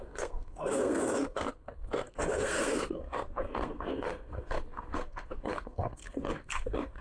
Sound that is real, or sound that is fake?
fake